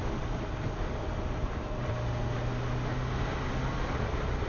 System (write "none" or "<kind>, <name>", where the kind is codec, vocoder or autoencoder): none